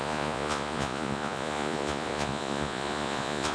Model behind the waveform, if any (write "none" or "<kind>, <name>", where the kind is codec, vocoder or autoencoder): vocoder, Vocos